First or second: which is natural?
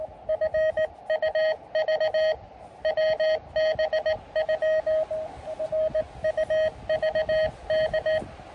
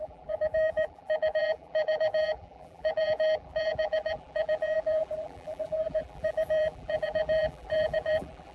first